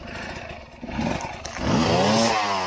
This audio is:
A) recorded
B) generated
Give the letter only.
A